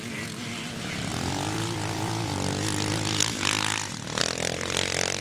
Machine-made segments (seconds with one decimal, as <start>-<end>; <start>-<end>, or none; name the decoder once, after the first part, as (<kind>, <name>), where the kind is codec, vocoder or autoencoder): 1.1-4.2 (vocoder, BigVGAN v2)